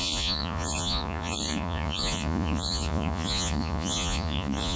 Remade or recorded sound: remade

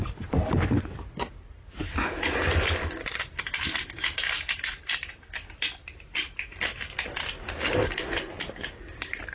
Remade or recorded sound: recorded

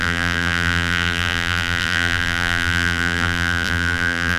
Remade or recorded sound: remade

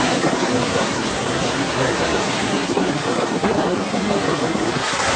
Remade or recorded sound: remade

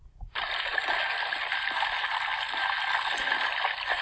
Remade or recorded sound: recorded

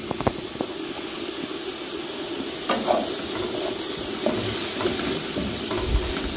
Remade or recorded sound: recorded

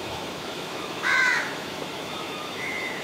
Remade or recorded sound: remade